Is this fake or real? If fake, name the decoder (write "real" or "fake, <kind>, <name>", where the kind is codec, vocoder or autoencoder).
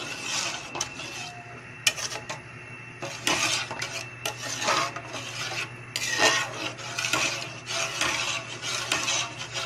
real